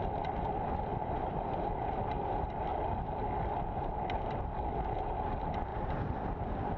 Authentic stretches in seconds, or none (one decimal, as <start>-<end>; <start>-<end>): 0.0-0.9; 2.0-5.7; 6.3-6.8